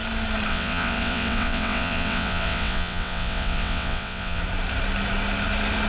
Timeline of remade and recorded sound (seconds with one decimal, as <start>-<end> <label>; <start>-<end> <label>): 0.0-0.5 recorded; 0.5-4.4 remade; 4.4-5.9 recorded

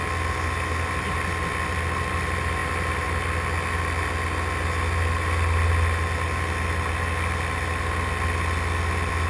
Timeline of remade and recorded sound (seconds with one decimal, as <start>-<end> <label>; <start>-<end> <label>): 0.0-9.3 recorded

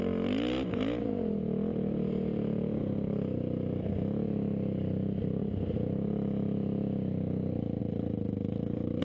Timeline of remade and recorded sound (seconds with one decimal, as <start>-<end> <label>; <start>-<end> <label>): 0.0-7.8 recorded; 7.8-9.0 remade